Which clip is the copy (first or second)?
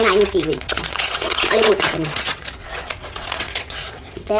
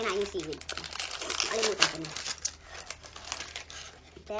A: first